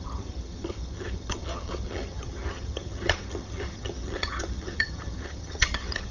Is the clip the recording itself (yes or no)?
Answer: no